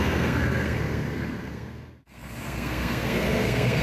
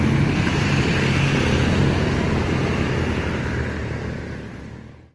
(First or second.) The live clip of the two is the second